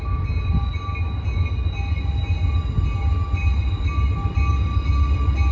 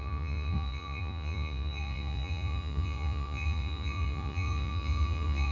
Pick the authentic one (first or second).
first